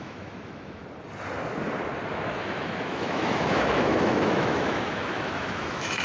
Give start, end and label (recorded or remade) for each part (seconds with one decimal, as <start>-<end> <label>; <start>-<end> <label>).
0.0-0.8 remade; 0.8-2.1 recorded; 2.1-6.0 remade